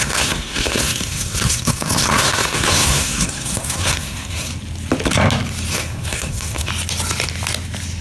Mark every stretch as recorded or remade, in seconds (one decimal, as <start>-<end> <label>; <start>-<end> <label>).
0.0-4.5 remade; 4.5-5.7 recorded; 5.7-6.7 remade; 6.7-8.0 recorded